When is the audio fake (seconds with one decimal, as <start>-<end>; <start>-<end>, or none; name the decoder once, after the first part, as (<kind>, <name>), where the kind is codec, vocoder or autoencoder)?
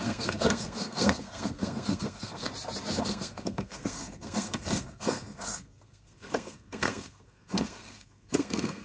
0.0-2.5 (codec, SNAC); 3.0-8.8